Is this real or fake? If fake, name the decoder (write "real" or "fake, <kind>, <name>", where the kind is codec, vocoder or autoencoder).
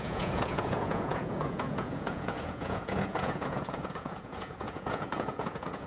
fake, vocoder, Vocos